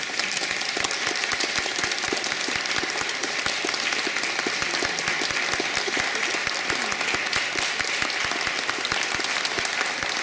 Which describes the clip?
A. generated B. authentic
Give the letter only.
B